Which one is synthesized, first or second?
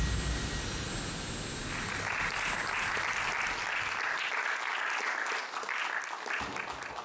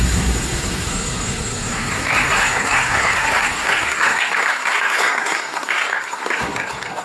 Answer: second